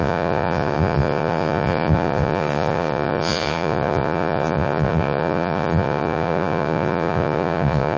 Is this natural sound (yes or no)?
no